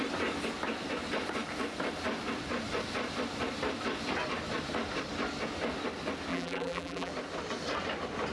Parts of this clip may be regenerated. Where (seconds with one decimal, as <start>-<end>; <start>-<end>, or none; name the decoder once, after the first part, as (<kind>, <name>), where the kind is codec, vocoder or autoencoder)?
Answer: 6.3-7.1 (vocoder, BigVGAN v2)